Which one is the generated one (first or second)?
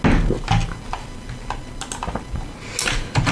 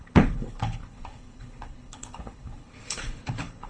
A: second